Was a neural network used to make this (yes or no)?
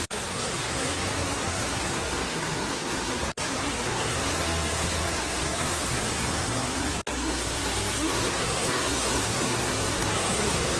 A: yes